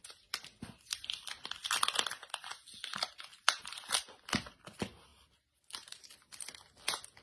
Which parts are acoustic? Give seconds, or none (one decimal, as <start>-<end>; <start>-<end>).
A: 0.0-2.9; 3.6-5.1; 6.1-7.2